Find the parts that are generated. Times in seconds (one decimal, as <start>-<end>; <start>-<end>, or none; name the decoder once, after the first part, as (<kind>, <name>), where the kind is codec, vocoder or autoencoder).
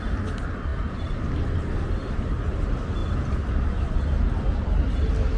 none